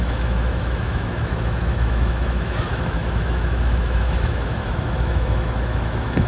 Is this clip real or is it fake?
fake